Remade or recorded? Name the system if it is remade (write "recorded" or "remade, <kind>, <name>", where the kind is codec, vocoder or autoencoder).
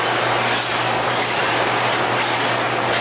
recorded